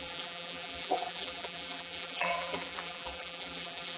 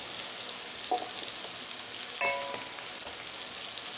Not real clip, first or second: first